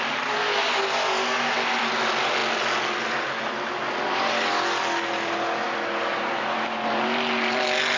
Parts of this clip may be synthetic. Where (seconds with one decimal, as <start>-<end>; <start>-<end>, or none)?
none